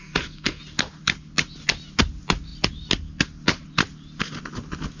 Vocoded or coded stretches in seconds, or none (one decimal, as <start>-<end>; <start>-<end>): 0.0-0.6